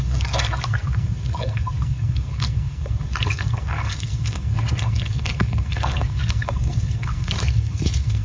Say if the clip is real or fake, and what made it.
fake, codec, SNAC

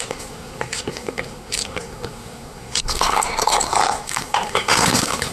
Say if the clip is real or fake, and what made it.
fake, codec, SNAC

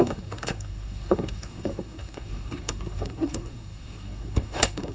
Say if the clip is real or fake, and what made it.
fake, codec, SNAC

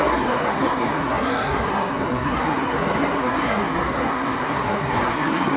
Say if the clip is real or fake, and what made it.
fake, codec, SNAC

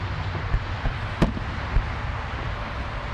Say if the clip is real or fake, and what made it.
real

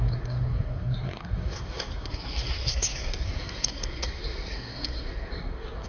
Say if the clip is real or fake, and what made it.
fake, codec, SNAC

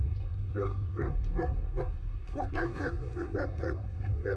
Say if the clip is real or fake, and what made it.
fake, codec, SNAC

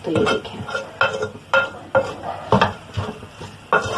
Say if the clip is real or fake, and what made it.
real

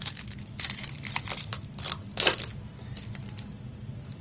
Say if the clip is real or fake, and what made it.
real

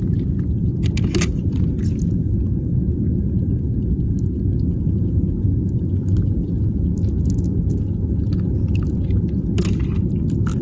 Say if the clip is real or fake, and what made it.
real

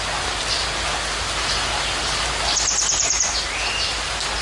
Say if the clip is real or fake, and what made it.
real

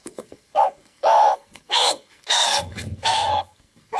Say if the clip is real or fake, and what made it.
fake, codec, SNAC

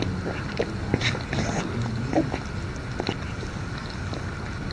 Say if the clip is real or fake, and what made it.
real